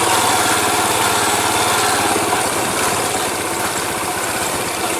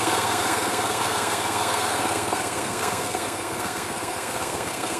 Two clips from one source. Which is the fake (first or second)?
second